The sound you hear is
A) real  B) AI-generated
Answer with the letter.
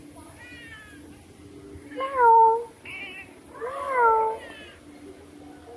A